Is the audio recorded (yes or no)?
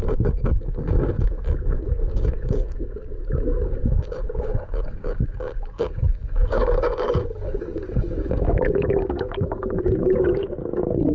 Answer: no